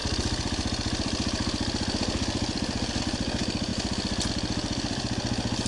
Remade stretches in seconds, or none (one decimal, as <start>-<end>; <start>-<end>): 0.0-3.7; 4.3-5.7